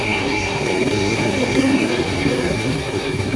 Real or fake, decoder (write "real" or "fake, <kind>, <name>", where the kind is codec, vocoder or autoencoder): fake, codec, SNAC